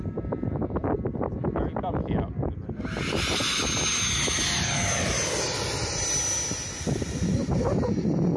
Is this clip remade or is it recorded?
recorded